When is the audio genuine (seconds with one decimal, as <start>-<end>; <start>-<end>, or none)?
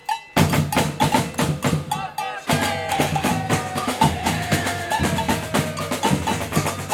0.0-2.9; 3.3-3.8; 5.0-6.9